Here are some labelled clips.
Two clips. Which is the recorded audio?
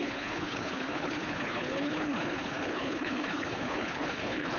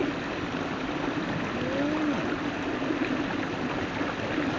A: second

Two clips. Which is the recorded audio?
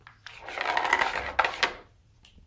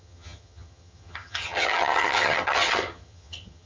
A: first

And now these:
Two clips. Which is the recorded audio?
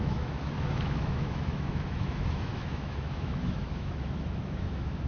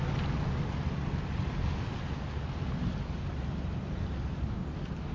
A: second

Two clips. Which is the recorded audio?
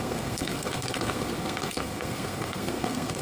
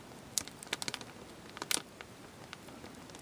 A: second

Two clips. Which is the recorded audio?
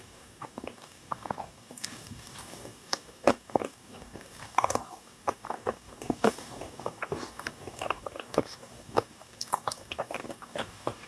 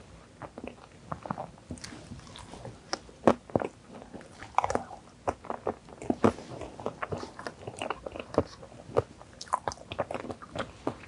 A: second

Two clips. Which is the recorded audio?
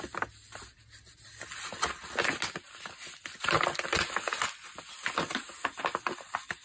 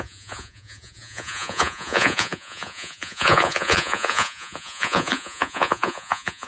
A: first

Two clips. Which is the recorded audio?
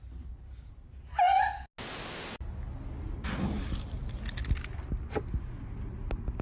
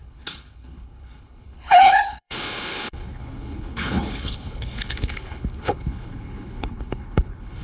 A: first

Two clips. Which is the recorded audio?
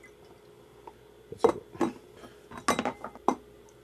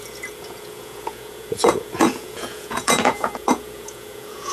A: first